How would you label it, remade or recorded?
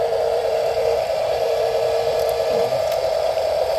remade